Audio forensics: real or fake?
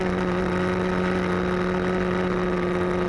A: real